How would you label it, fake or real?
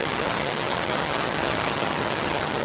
fake